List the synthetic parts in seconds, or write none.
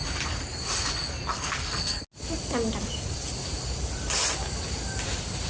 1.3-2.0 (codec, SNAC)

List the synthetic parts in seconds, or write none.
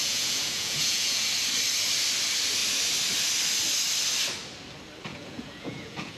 0.0-1.3 (vocoder, Vocos); 5.1-6.2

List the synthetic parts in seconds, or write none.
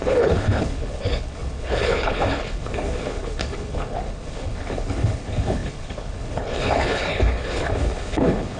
0.0-8.6 (codec, HILCodec)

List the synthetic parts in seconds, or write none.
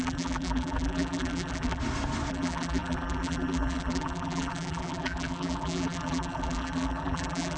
0.0-1.8 (vocoder, BigVGAN v2); 2.3-7.6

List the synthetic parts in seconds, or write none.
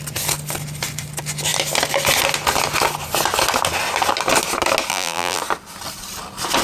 4.9-5.4 (vocoder, BigVGAN v2)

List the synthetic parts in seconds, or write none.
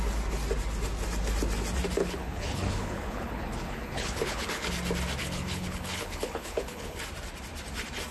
2.0-4.7 (codec, HILCodec); 5.2-7.0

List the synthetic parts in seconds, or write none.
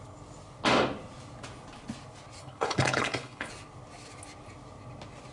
2.4-3.5 (codec, HILCodec)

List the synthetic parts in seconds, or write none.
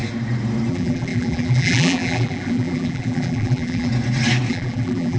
0.7-3.9 (vocoder, BigVGAN v2); 4.5-5.2